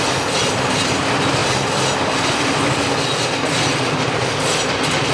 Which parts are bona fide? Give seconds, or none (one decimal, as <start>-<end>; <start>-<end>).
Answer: 0.0-5.1